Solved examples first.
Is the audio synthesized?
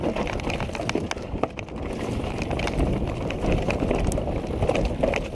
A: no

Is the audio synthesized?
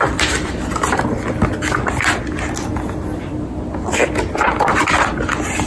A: no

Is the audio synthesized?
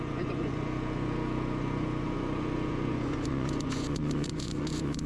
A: yes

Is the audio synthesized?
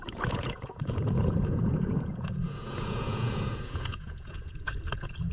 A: yes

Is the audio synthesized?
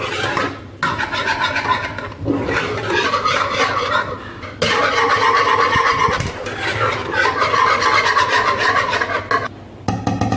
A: no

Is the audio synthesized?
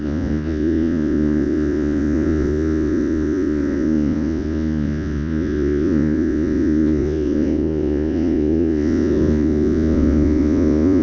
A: yes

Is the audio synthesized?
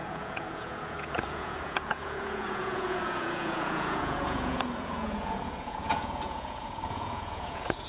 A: yes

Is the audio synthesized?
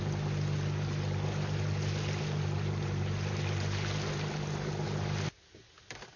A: no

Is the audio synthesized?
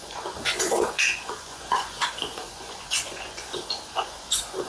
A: yes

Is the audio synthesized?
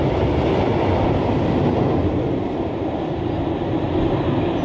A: no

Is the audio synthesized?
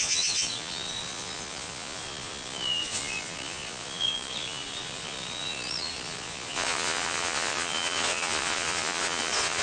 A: yes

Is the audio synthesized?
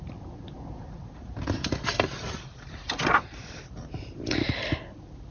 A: no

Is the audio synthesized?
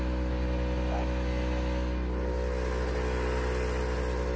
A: no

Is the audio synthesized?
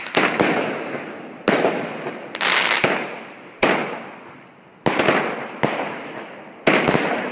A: no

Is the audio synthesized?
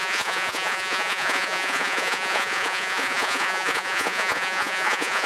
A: yes